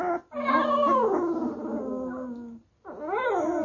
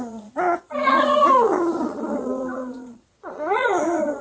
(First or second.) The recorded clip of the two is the first